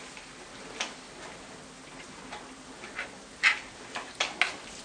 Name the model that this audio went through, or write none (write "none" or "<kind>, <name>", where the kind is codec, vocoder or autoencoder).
none